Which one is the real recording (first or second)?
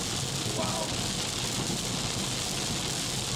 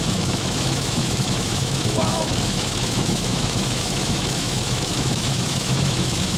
first